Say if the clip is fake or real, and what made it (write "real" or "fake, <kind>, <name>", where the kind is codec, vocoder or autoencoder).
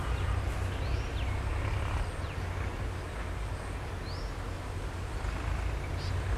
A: real